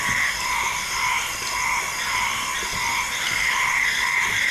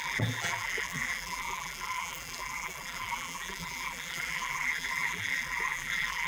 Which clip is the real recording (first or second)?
first